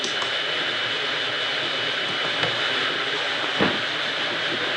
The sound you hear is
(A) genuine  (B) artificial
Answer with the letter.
A